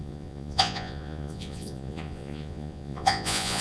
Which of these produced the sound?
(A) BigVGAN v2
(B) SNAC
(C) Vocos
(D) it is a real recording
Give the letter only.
C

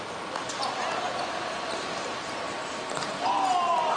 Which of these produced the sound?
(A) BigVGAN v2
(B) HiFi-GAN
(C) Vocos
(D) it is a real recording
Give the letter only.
D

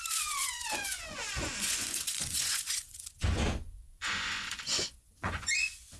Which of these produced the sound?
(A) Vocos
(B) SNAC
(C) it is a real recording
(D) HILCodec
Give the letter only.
A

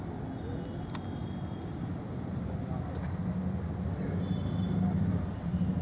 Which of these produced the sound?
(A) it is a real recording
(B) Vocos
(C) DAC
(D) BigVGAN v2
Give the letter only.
A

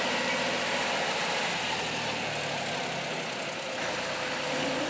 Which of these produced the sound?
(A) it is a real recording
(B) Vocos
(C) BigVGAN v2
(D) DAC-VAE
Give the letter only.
A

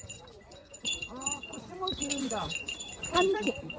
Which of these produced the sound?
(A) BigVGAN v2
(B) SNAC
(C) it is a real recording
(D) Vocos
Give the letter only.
D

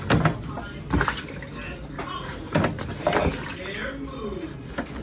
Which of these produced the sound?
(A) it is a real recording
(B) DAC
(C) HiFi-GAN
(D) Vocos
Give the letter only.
A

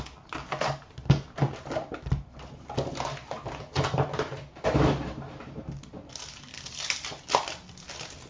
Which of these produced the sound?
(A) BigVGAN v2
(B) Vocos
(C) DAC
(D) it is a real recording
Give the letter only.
D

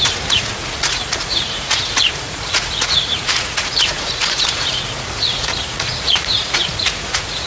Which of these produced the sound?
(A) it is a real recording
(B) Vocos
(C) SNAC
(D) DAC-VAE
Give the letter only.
B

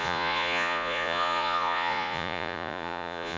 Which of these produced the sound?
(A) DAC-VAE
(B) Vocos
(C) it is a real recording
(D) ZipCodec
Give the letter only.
B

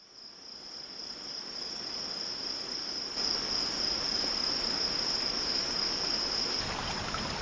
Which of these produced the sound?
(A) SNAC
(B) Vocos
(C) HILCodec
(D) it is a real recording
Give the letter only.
D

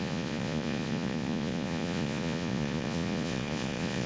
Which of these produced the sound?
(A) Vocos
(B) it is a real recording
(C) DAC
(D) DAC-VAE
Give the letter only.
A